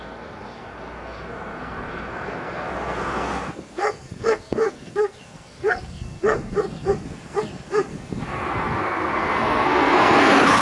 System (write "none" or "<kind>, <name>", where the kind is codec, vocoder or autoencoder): codec, SNAC